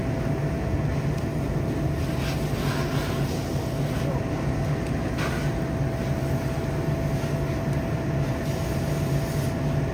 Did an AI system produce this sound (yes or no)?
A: no